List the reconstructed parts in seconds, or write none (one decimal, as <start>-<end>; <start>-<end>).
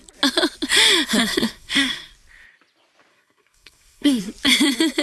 1.2-2.1; 3.1-4.2